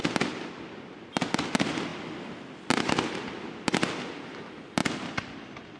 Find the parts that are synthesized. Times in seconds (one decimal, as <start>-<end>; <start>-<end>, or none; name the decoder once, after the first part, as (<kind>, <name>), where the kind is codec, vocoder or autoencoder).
none